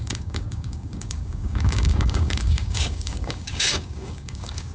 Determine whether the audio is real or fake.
fake